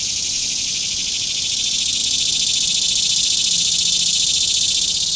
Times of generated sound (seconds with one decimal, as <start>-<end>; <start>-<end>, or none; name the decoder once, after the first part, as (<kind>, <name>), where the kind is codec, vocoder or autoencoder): none